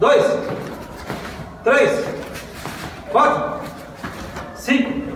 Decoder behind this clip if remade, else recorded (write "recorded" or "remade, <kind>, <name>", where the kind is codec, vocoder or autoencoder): recorded